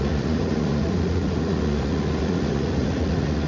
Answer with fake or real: fake